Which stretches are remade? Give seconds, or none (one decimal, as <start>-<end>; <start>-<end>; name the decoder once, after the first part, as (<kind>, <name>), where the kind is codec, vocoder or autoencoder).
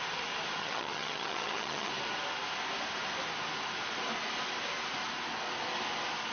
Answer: 0.6-1.9 (vocoder, HiFi-GAN)